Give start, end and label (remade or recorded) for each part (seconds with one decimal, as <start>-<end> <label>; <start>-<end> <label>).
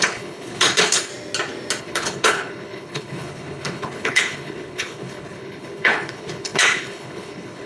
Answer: 0.0-1.1 remade; 1.1-1.8 recorded; 1.8-7.7 remade